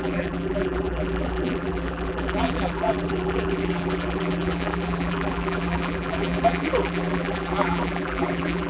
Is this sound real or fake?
fake